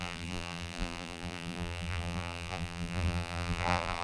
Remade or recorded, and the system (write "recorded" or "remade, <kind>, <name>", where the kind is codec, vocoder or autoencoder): remade, vocoder, BigVGAN v2